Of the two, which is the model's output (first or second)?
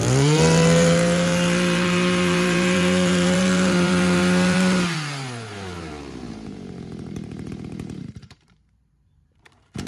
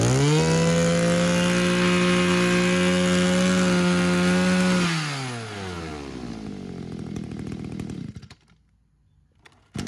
first